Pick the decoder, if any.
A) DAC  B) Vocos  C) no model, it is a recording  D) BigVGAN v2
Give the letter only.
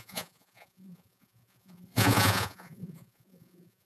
B